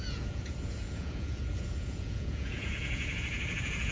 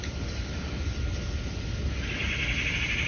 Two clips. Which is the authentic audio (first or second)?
second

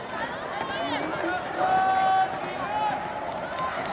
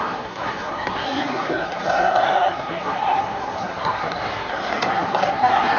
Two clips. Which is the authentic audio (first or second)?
first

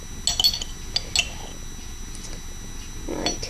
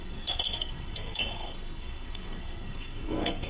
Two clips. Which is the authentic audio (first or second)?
first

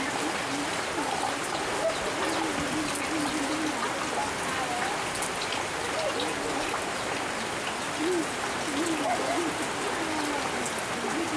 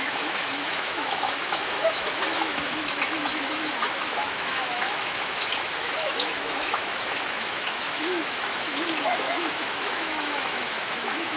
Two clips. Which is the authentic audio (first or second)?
first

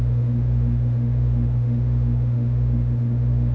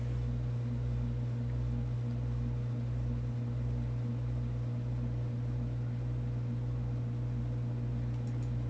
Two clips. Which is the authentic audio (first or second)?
second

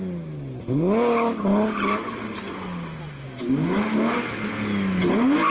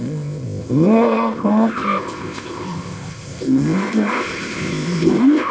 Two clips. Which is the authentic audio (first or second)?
first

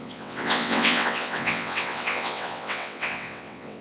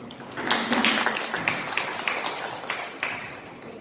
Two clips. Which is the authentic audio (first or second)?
second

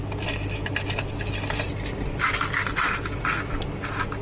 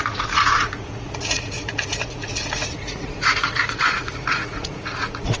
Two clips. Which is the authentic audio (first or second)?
first